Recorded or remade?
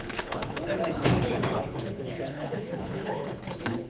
remade